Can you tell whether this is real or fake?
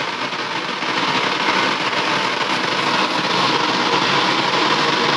real